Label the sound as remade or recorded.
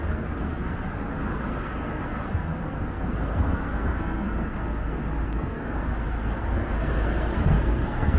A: remade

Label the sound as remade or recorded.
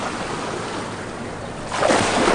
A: recorded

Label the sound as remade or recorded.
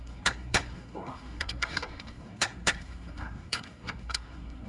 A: remade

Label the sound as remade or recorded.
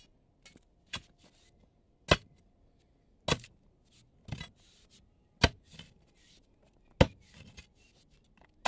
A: recorded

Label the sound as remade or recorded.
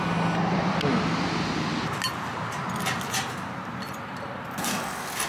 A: recorded